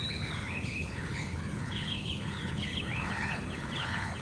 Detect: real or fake fake